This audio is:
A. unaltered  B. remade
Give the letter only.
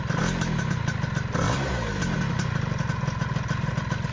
A